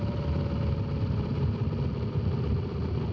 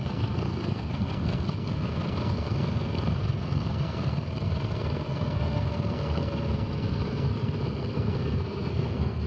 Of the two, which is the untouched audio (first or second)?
first